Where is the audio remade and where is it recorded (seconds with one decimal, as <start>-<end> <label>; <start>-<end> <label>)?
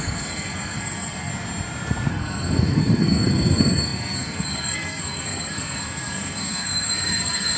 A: 0.0-1.3 remade; 1.3-2.1 recorded; 2.1-7.6 remade